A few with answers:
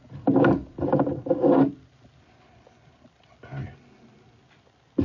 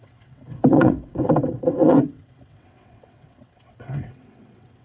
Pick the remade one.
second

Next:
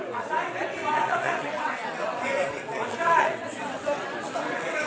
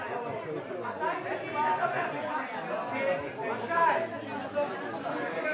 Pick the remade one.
first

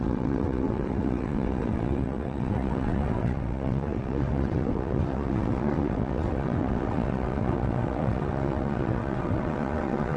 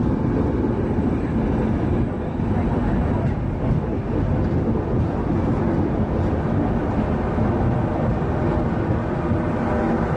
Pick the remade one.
first